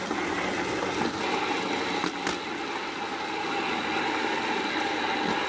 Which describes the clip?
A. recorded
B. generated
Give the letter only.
A